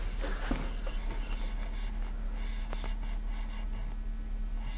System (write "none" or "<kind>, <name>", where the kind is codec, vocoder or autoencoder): none